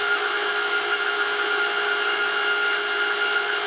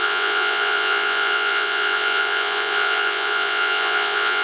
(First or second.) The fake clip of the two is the second